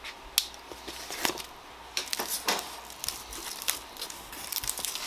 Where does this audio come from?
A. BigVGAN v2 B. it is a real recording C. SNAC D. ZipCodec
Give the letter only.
B